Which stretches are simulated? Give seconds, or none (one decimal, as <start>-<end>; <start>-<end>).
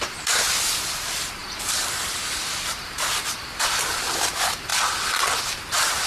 0.0-4.7; 5.4-6.1